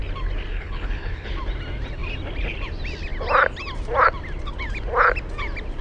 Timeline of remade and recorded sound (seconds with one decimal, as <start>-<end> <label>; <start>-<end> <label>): 0.0-0.5 recorded; 0.5-1.3 remade; 1.3-5.8 recorded